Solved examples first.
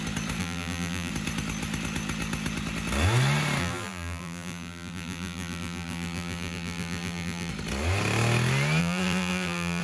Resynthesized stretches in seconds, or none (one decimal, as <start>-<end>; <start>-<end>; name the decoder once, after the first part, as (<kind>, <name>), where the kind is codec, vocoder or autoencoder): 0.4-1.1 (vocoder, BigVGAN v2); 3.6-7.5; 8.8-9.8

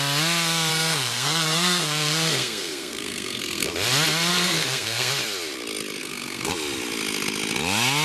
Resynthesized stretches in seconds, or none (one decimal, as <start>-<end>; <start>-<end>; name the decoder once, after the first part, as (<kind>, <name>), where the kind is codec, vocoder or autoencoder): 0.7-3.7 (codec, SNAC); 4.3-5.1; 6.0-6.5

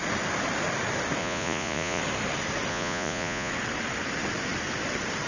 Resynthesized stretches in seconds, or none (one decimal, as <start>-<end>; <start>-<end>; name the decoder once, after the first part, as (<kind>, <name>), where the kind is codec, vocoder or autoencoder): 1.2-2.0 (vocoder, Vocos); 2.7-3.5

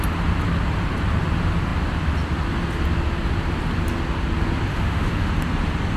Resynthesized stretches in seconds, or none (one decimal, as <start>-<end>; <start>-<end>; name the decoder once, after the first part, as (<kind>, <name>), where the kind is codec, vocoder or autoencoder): 4.7-5.3 (autoencoder, DAC-VAE)